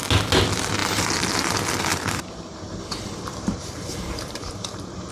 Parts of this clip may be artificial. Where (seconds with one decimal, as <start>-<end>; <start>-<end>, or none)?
1.9-5.1